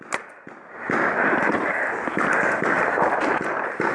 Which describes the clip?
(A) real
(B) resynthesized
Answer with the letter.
A